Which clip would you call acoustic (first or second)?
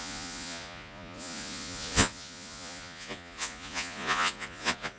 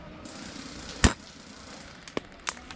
second